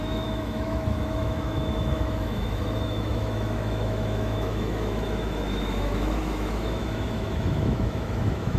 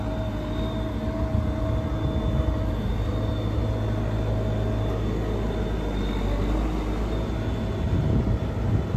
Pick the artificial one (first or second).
first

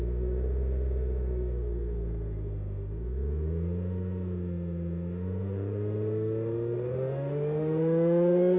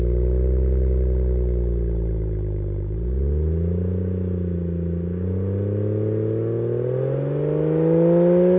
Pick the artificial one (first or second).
first